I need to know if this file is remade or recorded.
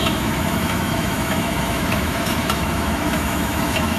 remade